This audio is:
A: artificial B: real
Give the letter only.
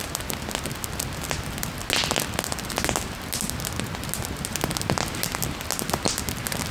B